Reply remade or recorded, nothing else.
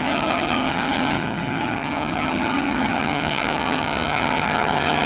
remade